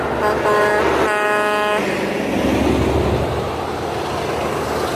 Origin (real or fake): real